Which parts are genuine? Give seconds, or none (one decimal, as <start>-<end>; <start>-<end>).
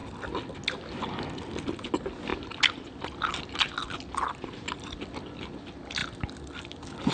0.0-7.1